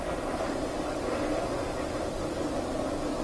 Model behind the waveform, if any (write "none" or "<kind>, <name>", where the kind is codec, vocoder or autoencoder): vocoder, BigVGAN v2